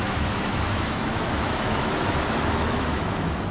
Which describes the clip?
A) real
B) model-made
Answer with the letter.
B